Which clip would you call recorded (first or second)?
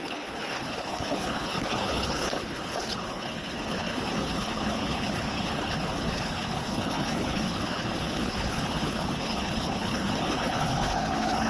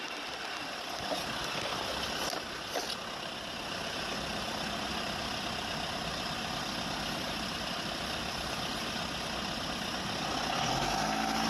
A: second